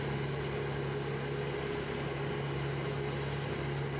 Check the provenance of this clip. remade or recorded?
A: recorded